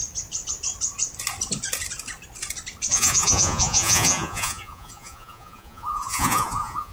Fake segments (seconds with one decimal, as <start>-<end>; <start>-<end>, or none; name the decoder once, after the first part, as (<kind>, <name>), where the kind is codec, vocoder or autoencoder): 2.9-6.9 (vocoder, Vocos)